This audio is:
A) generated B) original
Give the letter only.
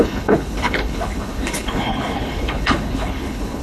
A